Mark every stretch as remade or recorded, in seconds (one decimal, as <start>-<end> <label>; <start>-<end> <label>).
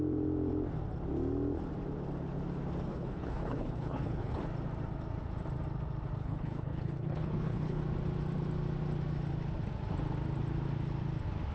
0.0-2.9 recorded; 2.9-4.4 remade; 4.4-6.2 recorded; 6.2-7.8 remade; 7.8-11.5 recorded